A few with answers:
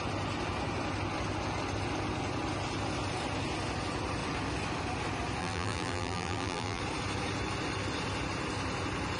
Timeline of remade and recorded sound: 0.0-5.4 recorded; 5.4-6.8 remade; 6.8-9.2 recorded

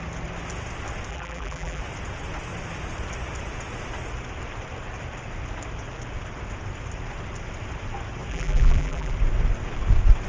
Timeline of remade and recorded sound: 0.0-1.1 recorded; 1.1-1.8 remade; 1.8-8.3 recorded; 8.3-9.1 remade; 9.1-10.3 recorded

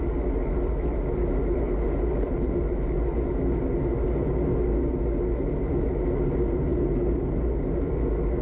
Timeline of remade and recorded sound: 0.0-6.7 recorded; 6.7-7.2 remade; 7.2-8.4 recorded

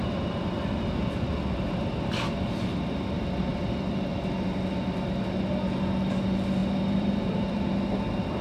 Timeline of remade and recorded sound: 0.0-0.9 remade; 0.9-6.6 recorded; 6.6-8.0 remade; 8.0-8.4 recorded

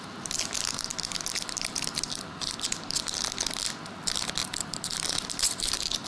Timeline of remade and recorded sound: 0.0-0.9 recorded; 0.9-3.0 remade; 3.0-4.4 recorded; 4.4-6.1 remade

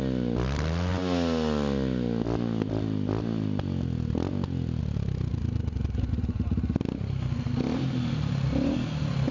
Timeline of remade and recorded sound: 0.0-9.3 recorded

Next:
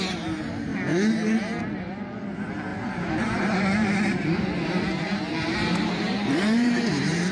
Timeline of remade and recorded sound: 0.0-2.7 recorded; 2.7-7.3 remade